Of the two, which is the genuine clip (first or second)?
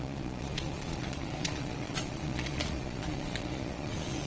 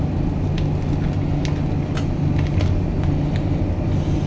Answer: second